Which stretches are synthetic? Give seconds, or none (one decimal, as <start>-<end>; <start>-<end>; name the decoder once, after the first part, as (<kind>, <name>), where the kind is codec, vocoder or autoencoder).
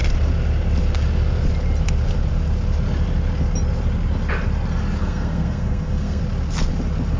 5.0-6.2 (codec, SNAC)